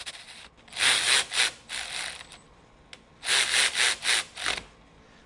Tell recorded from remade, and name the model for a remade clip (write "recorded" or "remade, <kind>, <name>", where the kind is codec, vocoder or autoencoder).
recorded